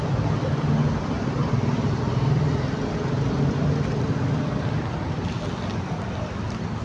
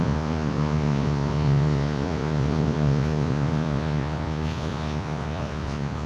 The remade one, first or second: second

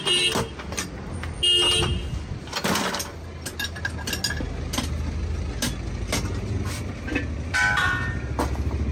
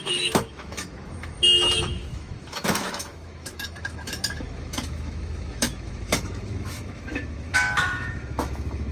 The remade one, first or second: second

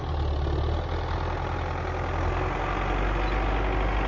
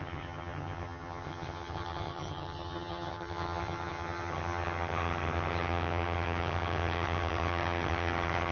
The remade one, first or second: second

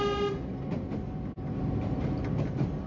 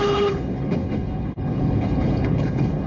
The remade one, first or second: second